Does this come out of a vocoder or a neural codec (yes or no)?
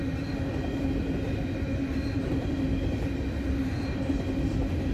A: no